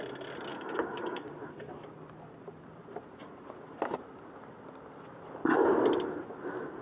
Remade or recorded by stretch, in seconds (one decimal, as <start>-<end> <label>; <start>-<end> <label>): 0.0-0.5 recorded; 0.5-1.3 remade; 1.3-6.8 recorded